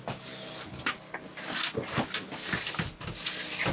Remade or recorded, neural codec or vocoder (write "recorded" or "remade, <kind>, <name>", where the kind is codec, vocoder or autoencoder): recorded